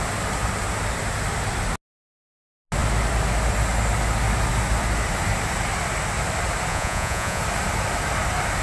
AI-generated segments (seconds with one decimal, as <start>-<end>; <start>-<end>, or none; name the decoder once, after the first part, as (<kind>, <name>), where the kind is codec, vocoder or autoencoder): 6.7-7.4 (vocoder, Vocos)